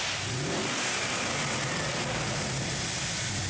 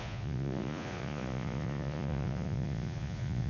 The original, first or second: first